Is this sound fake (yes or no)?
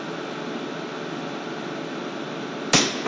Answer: no